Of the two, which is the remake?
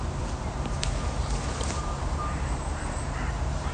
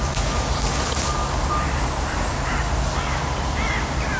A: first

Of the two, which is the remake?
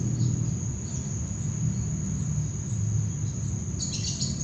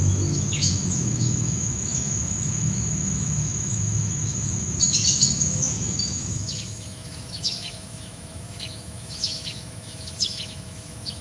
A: second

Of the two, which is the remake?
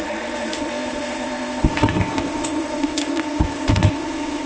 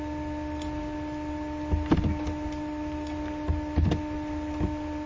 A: first